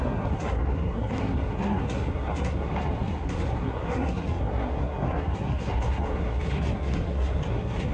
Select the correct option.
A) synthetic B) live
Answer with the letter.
A